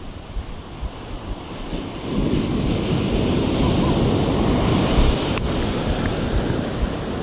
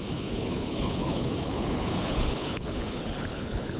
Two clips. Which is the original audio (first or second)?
first